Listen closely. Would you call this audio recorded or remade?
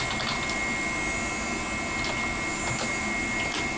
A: recorded